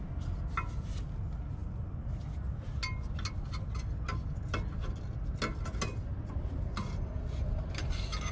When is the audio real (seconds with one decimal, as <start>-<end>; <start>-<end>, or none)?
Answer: 0.0-8.3